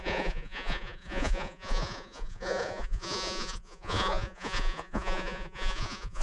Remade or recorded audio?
remade